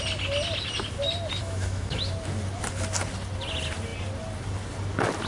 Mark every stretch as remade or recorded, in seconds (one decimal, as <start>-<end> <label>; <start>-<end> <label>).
0.0-1.4 recorded; 1.4-2.0 remade; 2.0-5.3 recorded

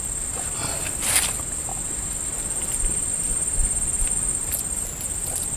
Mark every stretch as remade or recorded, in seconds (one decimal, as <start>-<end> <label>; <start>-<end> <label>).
0.0-5.6 recorded

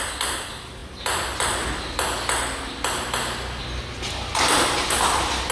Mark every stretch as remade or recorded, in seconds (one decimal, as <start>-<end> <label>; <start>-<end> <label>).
0.0-5.5 recorded

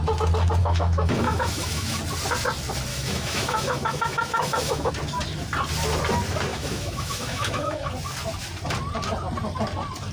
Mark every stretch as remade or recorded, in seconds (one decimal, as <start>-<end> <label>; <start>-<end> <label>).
0.0-0.6 recorded; 0.6-2.0 remade; 2.0-2.9 recorded; 2.9-4.9 remade; 4.9-6.5 recorded; 6.5-7.9 remade; 7.9-10.1 recorded

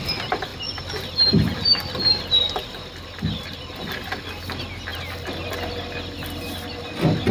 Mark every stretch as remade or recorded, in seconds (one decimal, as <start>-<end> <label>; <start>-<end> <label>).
0.0-7.3 recorded

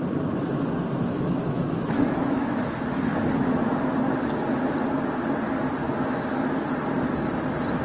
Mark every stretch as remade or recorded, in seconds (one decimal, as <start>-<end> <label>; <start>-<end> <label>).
0.0-1.1 recorded; 1.1-2.6 remade; 2.6-7.8 recorded